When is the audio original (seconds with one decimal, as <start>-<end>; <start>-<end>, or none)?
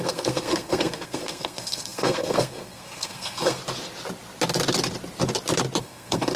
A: 3.6-5.8